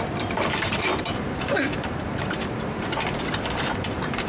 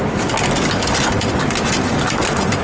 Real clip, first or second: second